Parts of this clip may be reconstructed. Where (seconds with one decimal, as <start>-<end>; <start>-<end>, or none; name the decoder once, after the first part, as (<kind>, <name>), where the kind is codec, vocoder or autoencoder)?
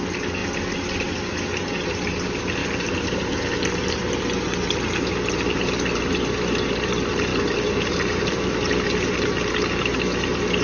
2.6-4.0 (vocoder, BigVGAN v2); 7.3-9.3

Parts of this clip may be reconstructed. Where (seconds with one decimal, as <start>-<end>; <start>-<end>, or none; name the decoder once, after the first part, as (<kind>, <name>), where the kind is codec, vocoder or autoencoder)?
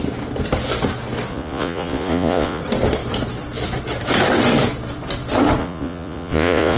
1.3-2.6 (vocoder, Vocos); 5.6-6.8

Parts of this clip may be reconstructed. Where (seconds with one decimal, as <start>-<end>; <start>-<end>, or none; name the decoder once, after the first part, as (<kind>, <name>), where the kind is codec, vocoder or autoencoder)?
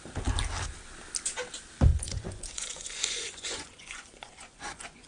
1.9-5.1 (vocoder, Vocos)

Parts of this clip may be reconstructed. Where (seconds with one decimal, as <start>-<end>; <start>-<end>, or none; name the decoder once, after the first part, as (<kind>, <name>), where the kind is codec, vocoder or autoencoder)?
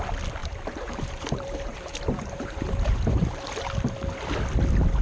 0.4-3.4 (vocoder, BigVGAN v2)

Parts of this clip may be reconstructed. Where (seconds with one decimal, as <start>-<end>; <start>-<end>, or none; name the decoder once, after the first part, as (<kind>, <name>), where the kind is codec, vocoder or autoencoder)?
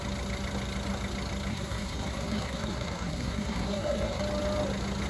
1.5-4.2 (codec, SNAC)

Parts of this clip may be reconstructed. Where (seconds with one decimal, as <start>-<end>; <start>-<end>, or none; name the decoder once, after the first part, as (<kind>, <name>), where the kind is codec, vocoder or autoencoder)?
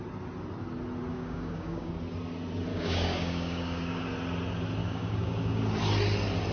1.1-1.9 (codec, DAC); 2.7-4.0; 4.8-5.6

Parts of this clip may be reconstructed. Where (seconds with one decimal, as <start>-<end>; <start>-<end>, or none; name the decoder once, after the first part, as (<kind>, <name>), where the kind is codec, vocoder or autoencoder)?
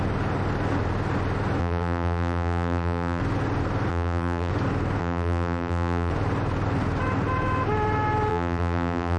1.6-3.2 (vocoder, BigVGAN v2); 3.9-4.5; 5.0-6.1; 8.3-9.2